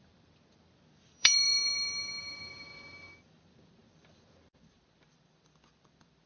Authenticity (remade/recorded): remade